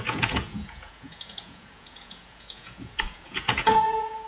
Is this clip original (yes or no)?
no